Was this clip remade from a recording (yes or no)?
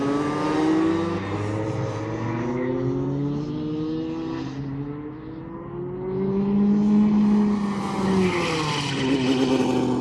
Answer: no